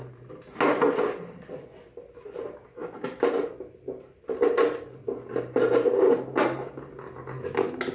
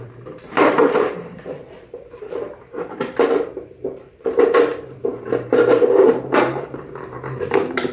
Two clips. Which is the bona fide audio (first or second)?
first